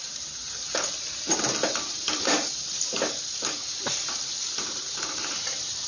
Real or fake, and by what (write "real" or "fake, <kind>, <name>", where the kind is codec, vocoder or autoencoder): fake, vocoder, BigVGAN v2